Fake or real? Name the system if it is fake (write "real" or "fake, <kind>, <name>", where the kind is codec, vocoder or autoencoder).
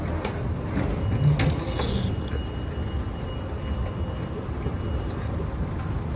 real